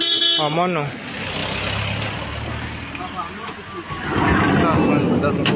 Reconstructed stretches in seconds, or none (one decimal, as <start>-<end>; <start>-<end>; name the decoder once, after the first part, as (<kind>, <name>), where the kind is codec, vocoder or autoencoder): none